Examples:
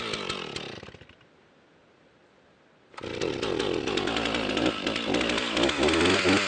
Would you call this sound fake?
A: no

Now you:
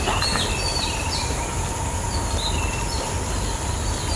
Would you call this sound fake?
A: no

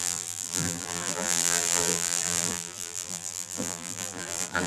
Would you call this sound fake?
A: yes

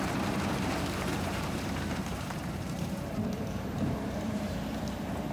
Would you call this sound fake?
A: yes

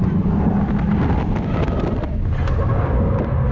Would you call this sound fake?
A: yes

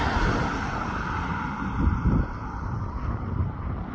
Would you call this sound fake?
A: yes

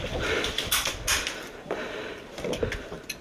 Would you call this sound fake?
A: no